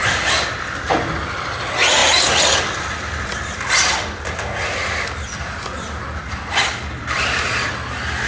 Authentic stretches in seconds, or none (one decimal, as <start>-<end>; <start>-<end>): 0.0-8.3